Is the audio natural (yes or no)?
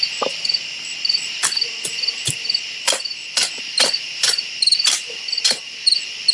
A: yes